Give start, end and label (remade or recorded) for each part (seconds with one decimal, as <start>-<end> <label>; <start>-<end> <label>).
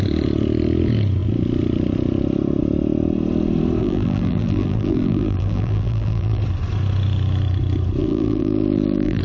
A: 0.0-3.8 recorded; 3.8-6.4 remade; 6.4-8.0 recorded; 8.0-9.2 remade